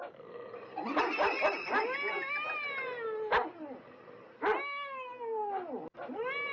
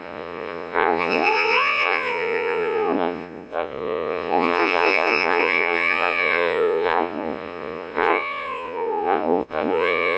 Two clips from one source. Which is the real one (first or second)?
first